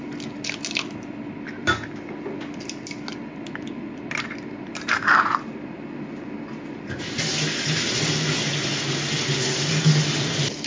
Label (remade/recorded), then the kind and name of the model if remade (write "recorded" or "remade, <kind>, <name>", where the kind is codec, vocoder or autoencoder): recorded